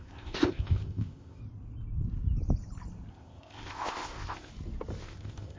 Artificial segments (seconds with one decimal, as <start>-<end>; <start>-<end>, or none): 0.0-1.4; 3.1-4.5; 5.0-5.6